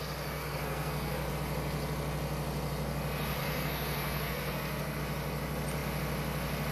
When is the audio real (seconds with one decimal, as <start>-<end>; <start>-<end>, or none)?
0.0-0.4; 1.3-3.4; 5.0-6.7